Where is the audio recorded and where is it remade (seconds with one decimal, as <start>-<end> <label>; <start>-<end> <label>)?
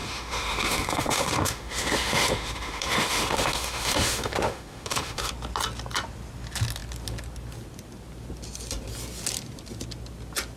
0.0-5.3 remade; 5.3-10.6 recorded